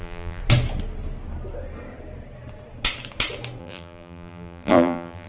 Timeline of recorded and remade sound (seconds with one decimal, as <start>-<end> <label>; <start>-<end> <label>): 0.0-0.4 remade; 0.4-3.6 recorded; 3.6-5.3 remade